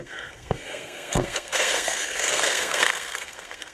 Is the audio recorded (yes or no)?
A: no